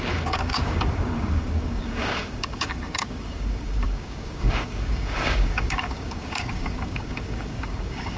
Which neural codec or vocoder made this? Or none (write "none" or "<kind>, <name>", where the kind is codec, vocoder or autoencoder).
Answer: codec, DAC